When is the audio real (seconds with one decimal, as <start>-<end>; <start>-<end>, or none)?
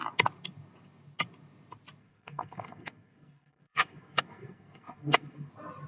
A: 0.0-2.0; 5.5-5.9